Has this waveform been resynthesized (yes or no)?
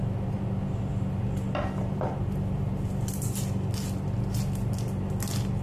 no